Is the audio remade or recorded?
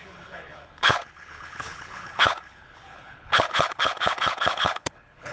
remade